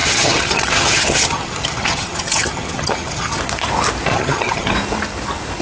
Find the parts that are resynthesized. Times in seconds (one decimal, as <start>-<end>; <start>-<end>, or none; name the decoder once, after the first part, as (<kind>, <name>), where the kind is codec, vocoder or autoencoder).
0.0-3.4 (vocoder, HiFi-GAN); 4.1-4.7